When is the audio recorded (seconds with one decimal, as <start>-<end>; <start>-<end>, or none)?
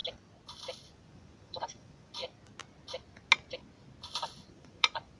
0.0-0.9; 2.2-4.5